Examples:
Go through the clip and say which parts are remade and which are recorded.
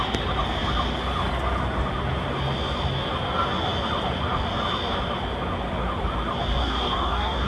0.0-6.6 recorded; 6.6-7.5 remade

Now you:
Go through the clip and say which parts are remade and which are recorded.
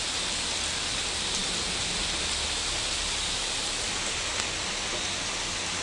0.0-5.8 recorded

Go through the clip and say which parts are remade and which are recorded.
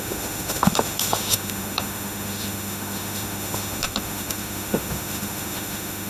0.0-6.1 remade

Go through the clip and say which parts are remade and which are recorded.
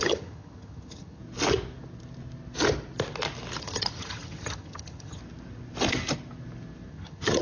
0.0-1.2 remade; 1.2-3.6 recorded; 3.6-5.2 remade; 5.2-6.9 recorded; 6.9-7.4 remade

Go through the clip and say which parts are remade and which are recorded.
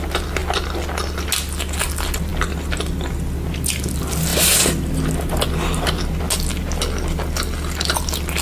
0.0-8.4 recorded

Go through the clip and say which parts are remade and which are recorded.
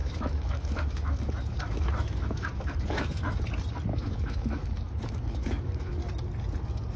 0.0-3.4 remade; 3.4-3.9 recorded; 3.9-6.0 remade; 6.0-7.0 recorded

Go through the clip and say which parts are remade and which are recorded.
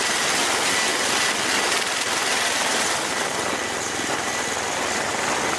0.0-5.6 recorded